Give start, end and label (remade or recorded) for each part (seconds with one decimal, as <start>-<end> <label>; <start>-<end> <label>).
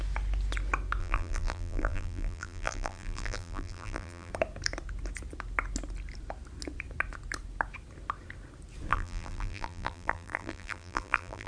0.0-1.0 recorded; 1.0-4.3 remade; 4.3-8.9 recorded; 8.9-11.5 remade